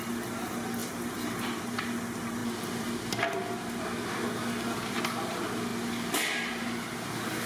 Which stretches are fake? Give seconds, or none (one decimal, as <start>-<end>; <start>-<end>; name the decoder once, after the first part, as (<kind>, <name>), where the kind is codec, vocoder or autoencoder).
none